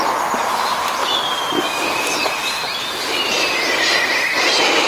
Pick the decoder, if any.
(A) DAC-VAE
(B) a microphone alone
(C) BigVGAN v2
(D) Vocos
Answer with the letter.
B